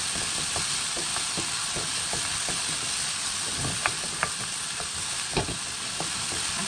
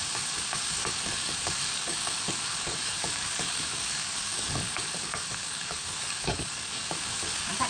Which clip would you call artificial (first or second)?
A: second